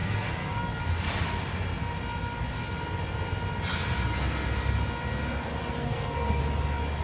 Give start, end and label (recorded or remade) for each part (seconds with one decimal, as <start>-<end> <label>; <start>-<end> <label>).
0.0-0.8 remade; 0.8-5.6 recorded; 5.6-6.4 remade; 6.4-7.0 recorded